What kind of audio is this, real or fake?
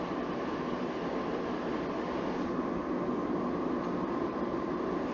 real